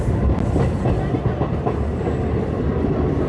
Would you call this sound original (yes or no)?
yes